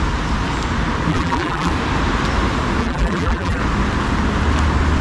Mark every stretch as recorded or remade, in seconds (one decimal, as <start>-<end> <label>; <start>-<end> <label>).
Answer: 0.0-1.1 recorded; 1.1-1.7 remade; 1.7-2.8 recorded; 2.8-3.6 remade; 3.6-5.0 recorded